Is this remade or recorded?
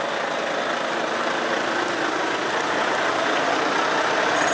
recorded